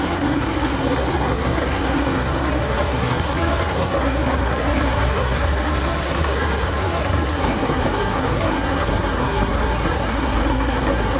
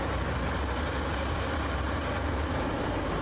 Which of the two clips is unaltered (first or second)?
second